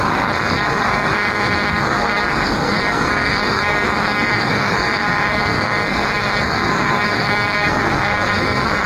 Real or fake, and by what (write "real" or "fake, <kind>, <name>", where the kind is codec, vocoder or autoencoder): fake, codec, SNAC